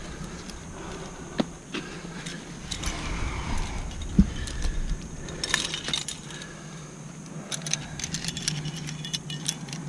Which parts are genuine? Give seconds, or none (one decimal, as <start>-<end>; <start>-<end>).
0.0-2.3; 3.3-9.9